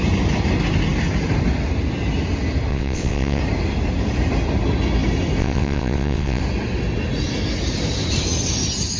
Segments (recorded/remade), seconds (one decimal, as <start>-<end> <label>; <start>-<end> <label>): 0.0-2.7 recorded; 2.7-3.4 remade; 3.4-5.4 recorded; 5.4-6.4 remade; 6.4-9.0 recorded